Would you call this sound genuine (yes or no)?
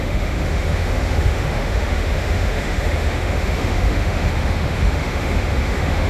no